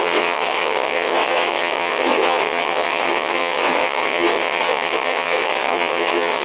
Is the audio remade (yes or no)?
yes